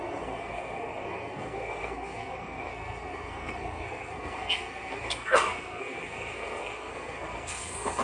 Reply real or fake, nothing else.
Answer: fake